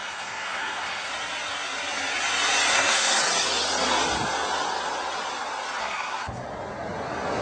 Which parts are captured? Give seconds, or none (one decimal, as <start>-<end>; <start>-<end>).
1.1-2.7; 3.2-5.8; 6.4-7.4